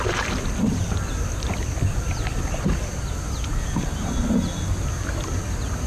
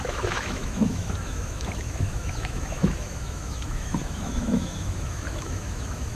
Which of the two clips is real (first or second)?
first